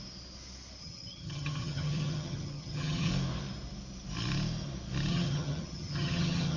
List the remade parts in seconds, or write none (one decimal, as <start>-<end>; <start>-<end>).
0.8-3.1; 5.1-6.6